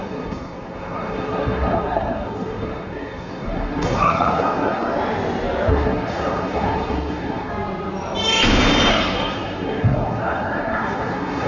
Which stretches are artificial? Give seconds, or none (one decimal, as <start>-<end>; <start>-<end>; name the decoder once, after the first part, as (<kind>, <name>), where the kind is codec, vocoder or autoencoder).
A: 0.0-4.9 (codec, SNAC); 5.7-7.5; 8.9-11.5